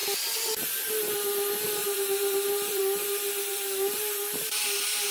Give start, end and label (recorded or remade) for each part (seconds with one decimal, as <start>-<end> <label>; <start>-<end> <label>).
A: 0.0-1.8 recorded; 1.8-2.8 remade; 2.8-3.5 recorded; 3.5-5.1 remade